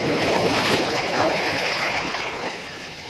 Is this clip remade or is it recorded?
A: remade